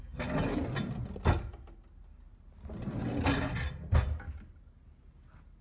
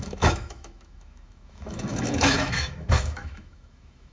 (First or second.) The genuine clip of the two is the first